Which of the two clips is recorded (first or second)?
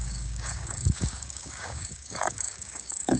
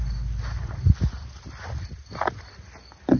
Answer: second